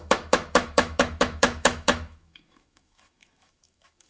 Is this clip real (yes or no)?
no